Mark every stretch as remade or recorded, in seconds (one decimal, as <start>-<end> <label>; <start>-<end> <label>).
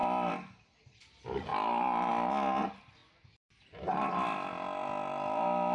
0.0-1.1 remade; 1.1-5.7 recorded